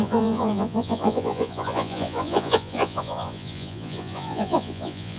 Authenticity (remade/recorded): remade